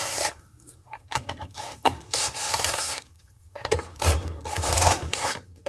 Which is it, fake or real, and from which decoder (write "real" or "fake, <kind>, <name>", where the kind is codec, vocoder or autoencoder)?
fake, codec, SNAC